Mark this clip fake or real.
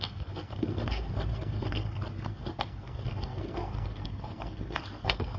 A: fake